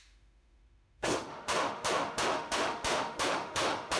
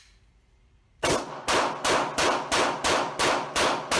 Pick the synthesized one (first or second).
first